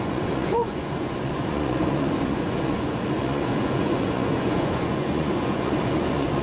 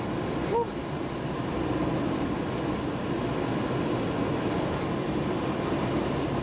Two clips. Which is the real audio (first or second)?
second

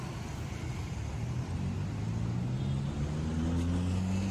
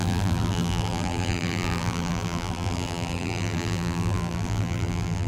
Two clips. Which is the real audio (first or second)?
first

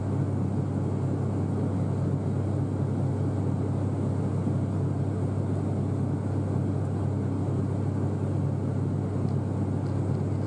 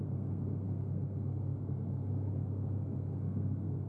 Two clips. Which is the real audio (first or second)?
first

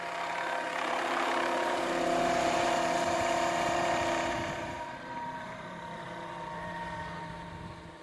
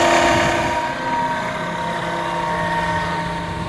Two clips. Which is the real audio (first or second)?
second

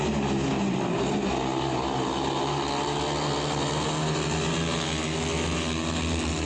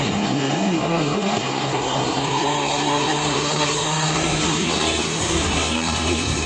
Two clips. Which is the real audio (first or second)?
first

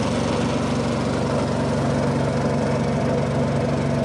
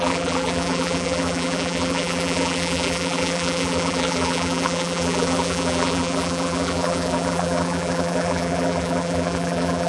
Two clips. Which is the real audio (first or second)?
first